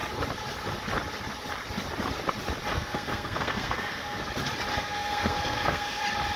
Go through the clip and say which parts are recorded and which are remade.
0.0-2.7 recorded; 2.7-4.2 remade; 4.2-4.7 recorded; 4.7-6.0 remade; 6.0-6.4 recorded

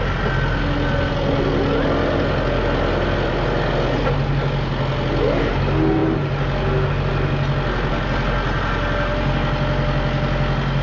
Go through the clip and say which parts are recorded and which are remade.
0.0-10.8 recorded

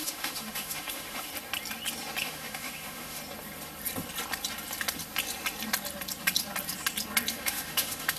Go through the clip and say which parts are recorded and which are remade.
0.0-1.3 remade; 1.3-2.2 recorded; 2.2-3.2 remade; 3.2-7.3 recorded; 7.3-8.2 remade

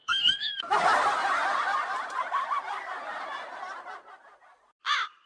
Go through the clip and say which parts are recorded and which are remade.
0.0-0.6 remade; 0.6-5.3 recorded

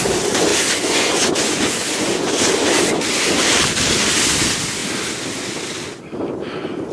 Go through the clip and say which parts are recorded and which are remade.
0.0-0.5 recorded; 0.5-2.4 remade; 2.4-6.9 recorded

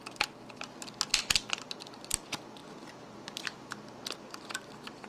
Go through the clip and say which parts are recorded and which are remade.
0.0-5.1 recorded

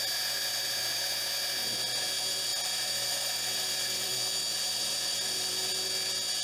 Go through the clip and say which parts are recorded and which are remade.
0.0-2.5 recorded; 2.5-4.1 remade; 4.1-4.5 recorded; 4.5-5.7 remade; 5.7-6.4 recorded